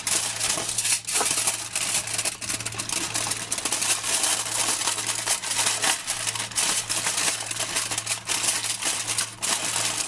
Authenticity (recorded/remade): recorded